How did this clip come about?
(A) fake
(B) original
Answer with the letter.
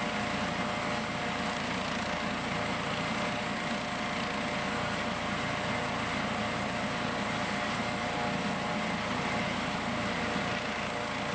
B